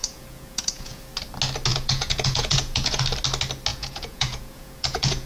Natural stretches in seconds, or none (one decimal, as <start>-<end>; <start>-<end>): 1.0-1.7; 3.0-3.7